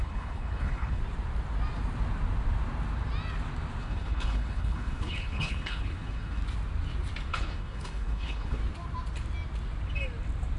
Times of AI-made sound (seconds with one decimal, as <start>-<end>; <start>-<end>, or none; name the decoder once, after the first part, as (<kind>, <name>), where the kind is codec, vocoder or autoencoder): 0.0-1.0 (codec, HILCodec); 3.8-6.4; 7.3-8.6